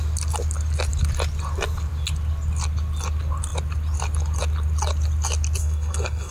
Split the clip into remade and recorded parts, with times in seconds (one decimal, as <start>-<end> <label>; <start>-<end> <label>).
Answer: 0.0-5.6 recorded; 5.6-6.3 remade